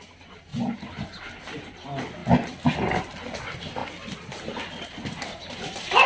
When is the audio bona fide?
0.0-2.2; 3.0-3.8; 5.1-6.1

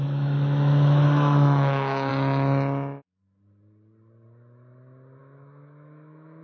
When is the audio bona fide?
2.1-5.2